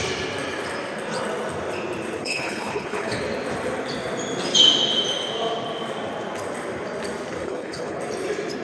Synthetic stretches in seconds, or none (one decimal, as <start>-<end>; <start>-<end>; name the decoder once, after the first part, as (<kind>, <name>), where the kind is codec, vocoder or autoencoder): 2.2-3.2 (codec, HILCodec); 7.4-8.0

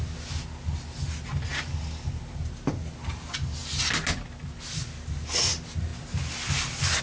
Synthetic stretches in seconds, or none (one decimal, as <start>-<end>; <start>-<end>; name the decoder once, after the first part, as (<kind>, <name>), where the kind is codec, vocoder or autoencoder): none

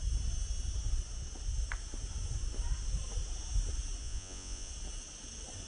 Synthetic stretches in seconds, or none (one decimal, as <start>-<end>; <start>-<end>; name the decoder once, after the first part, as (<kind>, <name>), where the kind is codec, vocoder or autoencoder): 4.0-4.7 (vocoder, Vocos)